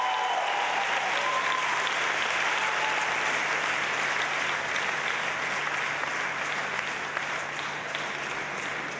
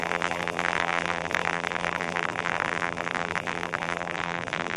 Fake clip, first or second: second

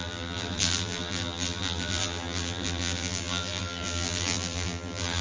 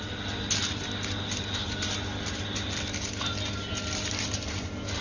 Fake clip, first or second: first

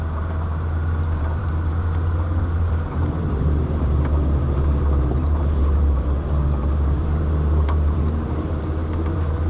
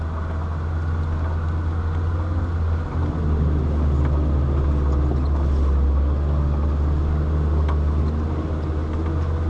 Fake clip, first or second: first